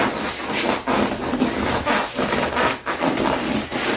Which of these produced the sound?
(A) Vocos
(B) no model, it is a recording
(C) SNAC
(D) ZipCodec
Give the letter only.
B